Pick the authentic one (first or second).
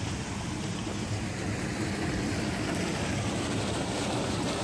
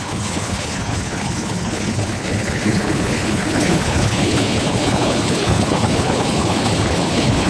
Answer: first